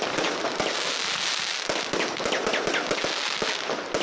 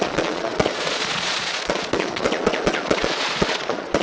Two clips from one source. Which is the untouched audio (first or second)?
first